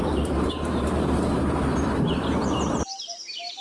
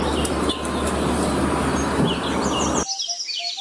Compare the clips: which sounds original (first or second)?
second